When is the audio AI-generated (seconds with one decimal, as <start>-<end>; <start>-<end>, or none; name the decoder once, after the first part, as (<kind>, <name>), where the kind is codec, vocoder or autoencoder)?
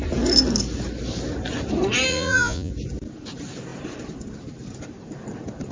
2.1-2.7 (vocoder, Vocos)